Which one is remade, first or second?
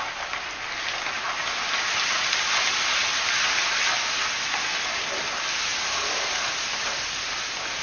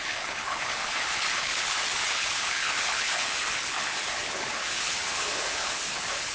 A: second